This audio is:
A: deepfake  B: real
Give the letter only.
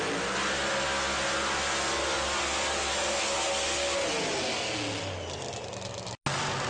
B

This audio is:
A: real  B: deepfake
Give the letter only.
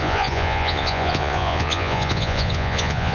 B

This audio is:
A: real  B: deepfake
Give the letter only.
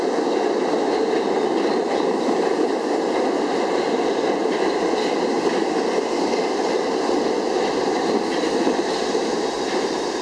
A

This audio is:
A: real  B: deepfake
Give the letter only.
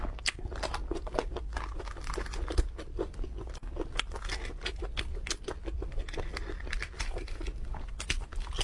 A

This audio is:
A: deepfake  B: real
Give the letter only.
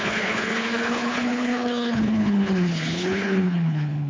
A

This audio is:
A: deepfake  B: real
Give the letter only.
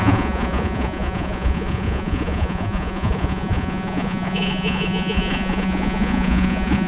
A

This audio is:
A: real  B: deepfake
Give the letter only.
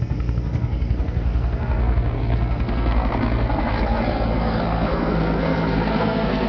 B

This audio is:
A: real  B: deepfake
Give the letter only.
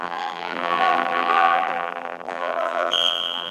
B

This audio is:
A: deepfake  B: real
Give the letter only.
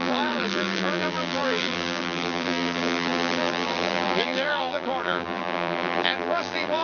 A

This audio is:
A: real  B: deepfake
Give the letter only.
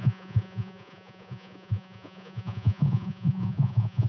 B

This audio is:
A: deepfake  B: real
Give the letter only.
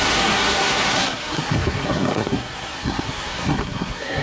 A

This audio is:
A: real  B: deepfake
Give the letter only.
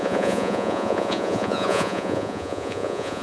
B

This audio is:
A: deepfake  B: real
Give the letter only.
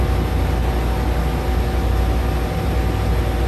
B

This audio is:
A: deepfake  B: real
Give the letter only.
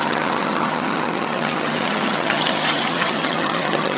A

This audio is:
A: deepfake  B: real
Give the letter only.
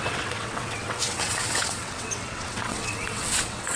A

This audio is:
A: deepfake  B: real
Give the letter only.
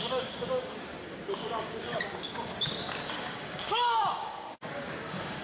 A